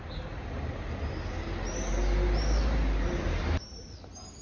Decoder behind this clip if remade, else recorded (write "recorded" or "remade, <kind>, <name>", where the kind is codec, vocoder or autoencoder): recorded